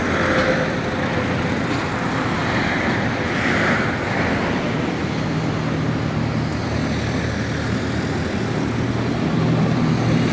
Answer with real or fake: real